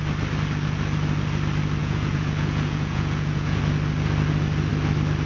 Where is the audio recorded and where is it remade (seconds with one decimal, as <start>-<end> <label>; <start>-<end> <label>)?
0.0-1.8 recorded; 1.8-3.6 remade; 3.6-5.3 recorded

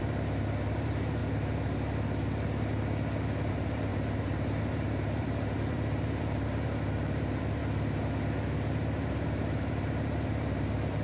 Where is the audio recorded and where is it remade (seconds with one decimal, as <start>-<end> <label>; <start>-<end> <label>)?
0.0-1.2 remade; 1.2-3.5 recorded; 3.5-7.6 remade; 7.6-8.7 recorded; 8.7-11.0 remade

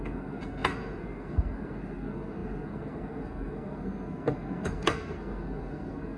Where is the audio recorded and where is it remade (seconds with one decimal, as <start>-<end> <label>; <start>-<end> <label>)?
0.0-6.2 remade

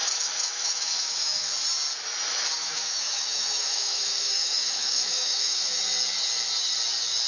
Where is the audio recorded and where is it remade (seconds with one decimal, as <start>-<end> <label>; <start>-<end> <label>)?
0.0-1.5 remade; 1.5-2.6 recorded; 2.6-5.8 remade; 5.8-7.3 recorded